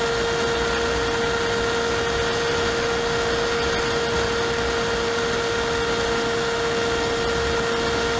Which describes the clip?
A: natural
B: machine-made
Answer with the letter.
A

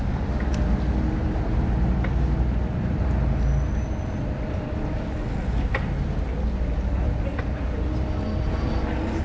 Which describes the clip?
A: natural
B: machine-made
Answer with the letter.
A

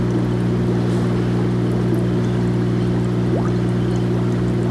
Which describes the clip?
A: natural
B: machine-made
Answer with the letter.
A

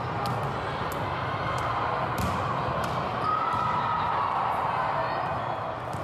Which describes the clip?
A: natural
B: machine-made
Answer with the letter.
A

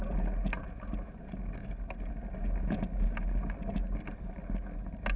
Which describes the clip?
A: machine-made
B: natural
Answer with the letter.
B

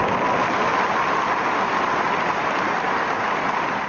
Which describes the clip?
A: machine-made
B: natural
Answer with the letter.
B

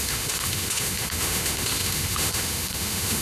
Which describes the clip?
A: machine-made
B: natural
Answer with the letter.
A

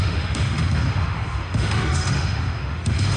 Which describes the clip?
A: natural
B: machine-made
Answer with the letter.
B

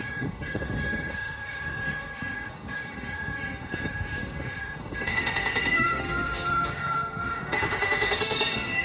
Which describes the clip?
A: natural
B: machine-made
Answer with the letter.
B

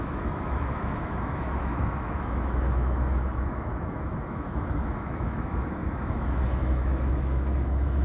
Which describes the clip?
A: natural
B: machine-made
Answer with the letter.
B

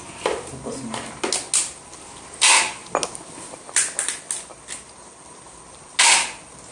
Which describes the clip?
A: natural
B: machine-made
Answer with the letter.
A